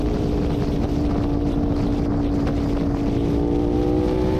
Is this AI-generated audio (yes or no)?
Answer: no